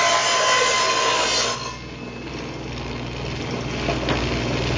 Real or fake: real